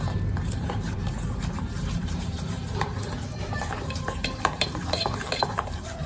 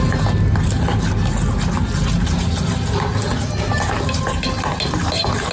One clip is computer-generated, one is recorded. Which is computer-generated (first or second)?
first